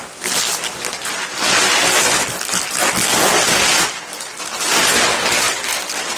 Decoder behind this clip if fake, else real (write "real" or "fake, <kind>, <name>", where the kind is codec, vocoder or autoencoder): real